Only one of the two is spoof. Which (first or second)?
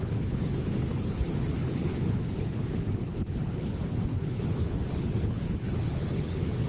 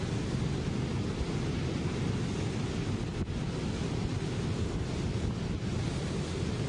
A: first